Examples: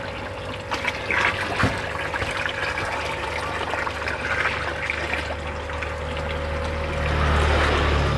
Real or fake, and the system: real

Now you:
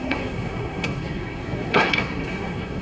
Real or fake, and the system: fake, codec, SNAC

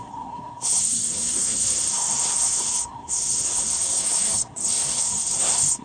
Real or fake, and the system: fake, codec, SNAC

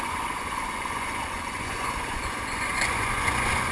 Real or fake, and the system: fake, vocoder, Vocos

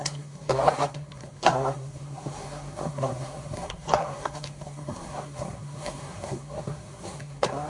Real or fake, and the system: fake, codec, SNAC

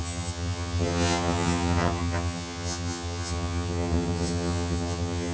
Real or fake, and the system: fake, vocoder, HiFi-GAN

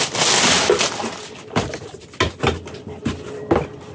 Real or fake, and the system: real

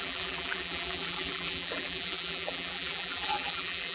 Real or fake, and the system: fake, vocoder, BigVGAN v2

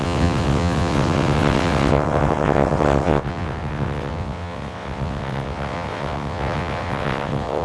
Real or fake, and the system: fake, vocoder, WaveNeXt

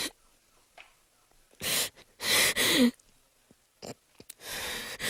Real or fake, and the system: real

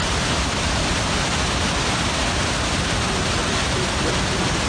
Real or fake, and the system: real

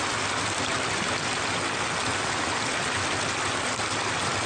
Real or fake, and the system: real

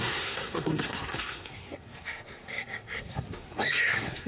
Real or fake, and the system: fake, codec, SNAC